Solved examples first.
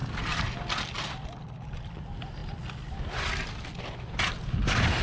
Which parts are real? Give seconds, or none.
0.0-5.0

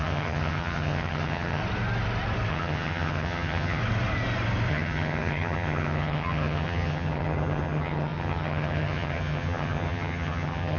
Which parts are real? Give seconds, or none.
1.6-2.5; 3.8-4.7

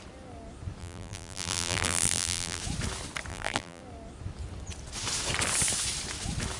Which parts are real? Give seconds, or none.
0.0-0.8; 2.6-3.3; 3.8-6.6

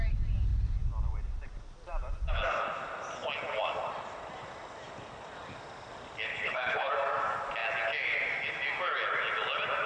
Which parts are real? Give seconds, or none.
0.0-6.3; 6.9-9.9

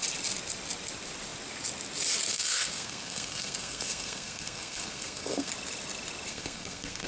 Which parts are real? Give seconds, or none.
0.0-2.3; 5.5-6.3

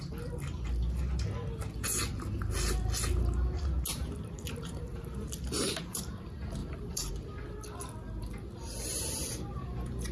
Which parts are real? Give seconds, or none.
0.0-3.9; 6.0-6.6; 7.1-8.9